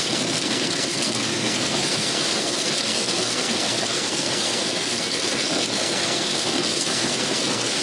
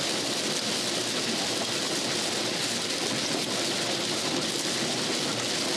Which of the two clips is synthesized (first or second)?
first